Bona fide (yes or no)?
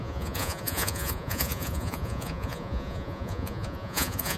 no